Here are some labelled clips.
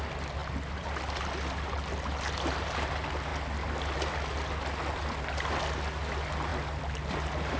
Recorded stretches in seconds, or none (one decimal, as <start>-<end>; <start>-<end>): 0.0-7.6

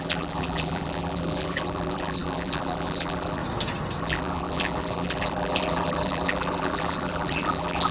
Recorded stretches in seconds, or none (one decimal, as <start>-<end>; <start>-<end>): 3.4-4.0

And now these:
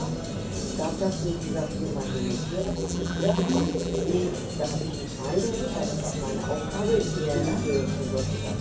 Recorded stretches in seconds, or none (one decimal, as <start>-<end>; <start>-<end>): 0.0-2.6; 4.1-8.6